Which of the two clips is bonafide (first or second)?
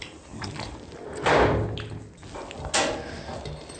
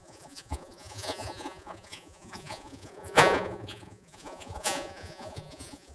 first